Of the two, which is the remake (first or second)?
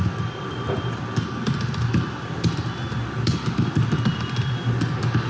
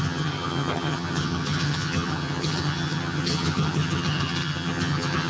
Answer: second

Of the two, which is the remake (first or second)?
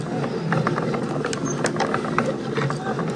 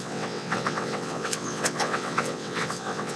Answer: second